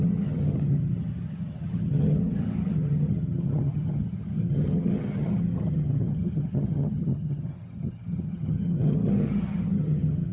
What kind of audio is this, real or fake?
fake